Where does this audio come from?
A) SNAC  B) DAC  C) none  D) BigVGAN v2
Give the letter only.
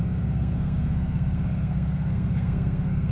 A